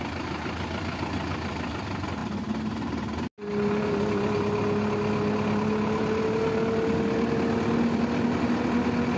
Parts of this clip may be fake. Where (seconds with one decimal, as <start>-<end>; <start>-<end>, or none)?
none